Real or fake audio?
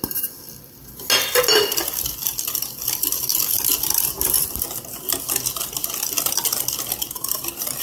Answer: real